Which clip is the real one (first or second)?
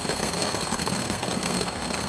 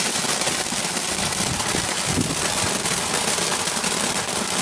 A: second